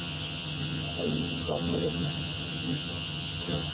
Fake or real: fake